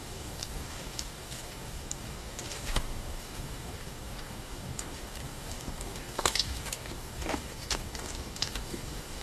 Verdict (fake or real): fake